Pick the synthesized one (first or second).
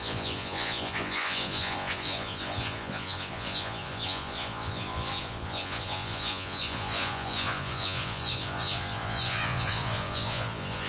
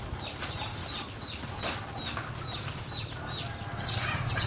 first